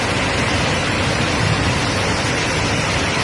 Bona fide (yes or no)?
yes